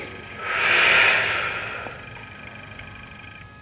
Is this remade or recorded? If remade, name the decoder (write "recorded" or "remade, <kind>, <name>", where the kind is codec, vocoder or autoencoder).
recorded